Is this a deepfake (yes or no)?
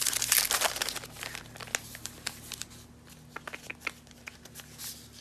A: no